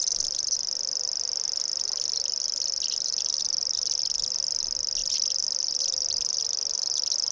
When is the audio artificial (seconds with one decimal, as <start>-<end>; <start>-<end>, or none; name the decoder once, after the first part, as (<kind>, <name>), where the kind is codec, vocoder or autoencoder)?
none